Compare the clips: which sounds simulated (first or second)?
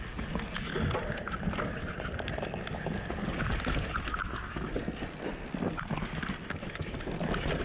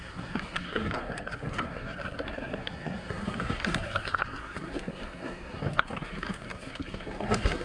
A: second